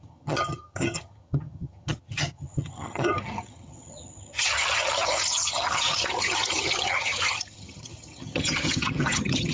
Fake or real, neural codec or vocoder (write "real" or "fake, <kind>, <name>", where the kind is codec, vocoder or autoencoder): fake, vocoder, HiFi-GAN